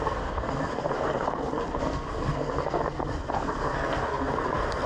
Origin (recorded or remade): remade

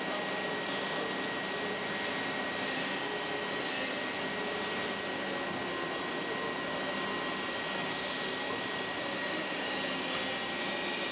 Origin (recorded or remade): recorded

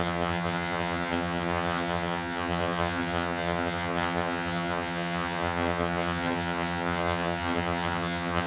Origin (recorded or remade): remade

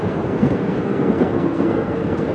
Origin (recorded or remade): remade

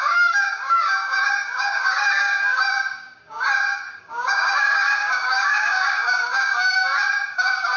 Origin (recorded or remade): remade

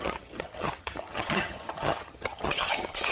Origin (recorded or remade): remade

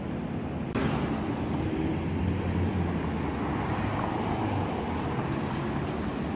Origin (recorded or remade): remade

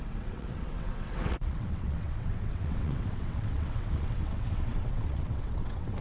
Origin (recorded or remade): remade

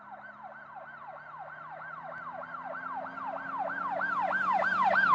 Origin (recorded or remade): recorded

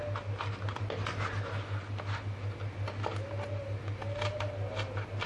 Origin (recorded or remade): recorded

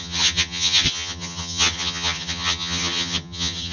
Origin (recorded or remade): remade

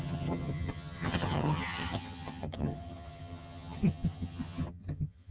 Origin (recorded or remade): remade